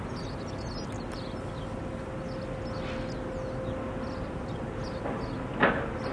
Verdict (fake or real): real